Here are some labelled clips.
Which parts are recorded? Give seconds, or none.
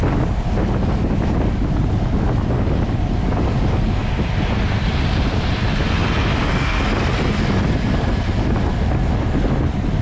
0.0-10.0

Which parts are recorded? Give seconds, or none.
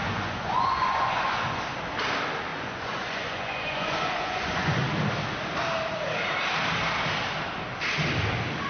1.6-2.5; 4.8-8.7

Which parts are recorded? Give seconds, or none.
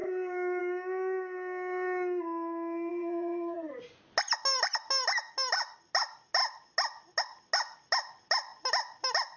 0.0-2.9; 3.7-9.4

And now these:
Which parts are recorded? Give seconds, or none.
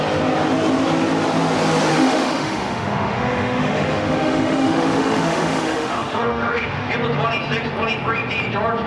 0.0-1.9; 6.9-8.9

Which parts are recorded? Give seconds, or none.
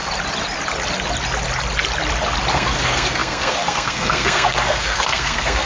0.0-2.5